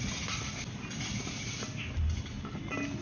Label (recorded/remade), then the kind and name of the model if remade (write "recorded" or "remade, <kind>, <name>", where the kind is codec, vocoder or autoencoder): recorded